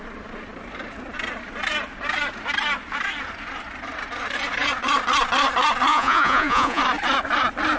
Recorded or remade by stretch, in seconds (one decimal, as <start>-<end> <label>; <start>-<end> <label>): 0.0-5.9 recorded; 5.9-6.8 remade; 6.8-7.8 recorded